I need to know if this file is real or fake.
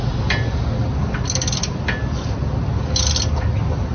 real